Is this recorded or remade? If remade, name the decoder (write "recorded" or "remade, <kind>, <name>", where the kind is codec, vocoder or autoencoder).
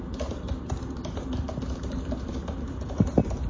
remade, vocoder, BigVGAN v2